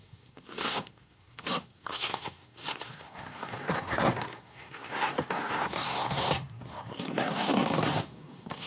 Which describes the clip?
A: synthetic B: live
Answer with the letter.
A